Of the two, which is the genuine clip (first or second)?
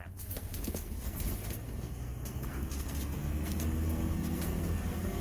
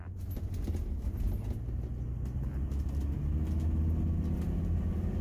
second